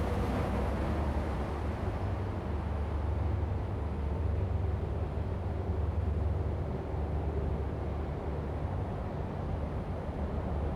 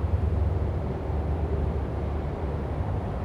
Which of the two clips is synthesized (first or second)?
second